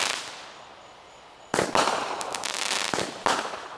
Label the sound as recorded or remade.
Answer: recorded